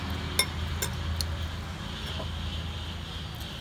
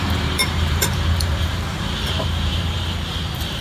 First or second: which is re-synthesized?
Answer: second